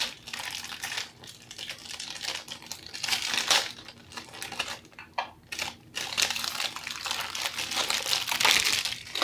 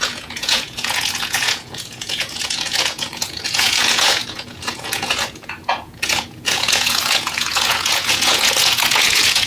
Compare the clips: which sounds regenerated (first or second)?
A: second